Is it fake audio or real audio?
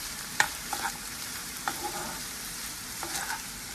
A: fake